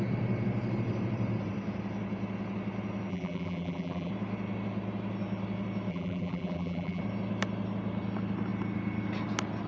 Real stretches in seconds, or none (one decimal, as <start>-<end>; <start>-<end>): 0.0-3.1; 4.1-5.9; 7.0-9.7